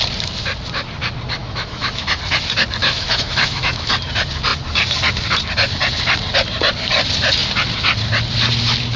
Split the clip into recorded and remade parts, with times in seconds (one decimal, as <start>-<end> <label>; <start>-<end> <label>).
0.0-1.4 recorded; 1.4-2.2 remade; 2.2-2.8 recorded; 2.8-3.9 remade; 3.9-9.0 recorded